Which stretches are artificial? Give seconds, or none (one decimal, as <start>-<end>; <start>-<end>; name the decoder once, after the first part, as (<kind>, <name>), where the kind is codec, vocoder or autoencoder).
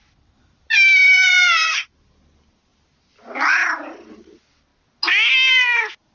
none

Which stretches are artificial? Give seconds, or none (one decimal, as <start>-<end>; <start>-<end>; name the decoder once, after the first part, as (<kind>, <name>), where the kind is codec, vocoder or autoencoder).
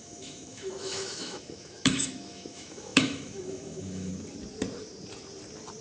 0.0-4.1 (autoencoder, DAC-VAE)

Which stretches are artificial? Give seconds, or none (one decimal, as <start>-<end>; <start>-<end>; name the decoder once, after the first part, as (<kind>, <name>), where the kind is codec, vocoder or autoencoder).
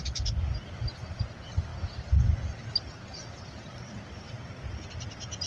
none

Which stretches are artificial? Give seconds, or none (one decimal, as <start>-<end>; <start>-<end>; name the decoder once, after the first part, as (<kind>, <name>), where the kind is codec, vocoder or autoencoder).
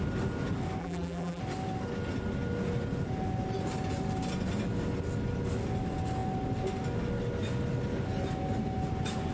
0.8-1.4 (vocoder, BigVGAN v2)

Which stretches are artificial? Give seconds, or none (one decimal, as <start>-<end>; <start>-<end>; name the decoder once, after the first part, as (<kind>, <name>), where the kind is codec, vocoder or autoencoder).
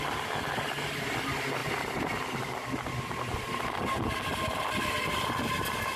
none